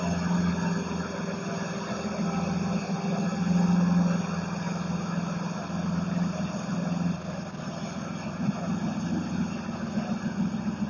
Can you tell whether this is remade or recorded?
recorded